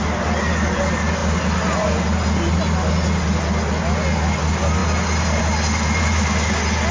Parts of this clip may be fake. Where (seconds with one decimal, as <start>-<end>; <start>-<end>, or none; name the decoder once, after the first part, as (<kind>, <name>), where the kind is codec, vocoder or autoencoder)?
none